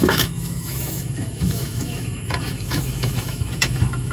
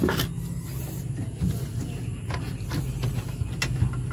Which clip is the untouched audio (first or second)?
second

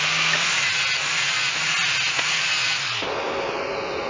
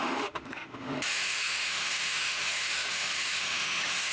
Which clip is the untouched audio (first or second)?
first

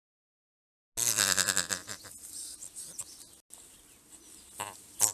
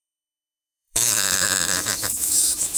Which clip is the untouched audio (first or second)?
first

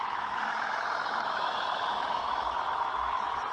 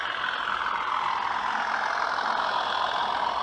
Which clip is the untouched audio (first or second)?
second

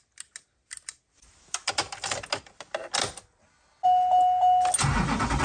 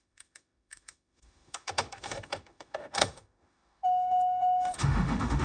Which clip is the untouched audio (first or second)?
first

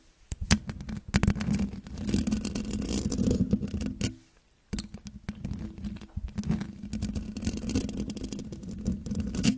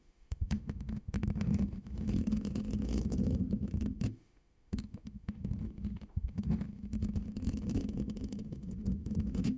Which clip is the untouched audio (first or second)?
first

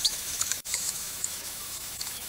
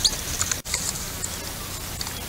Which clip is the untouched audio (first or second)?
second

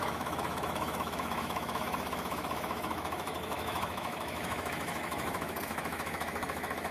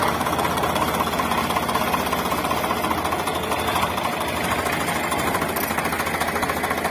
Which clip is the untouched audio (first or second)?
second